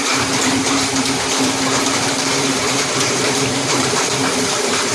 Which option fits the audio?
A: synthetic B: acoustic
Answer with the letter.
A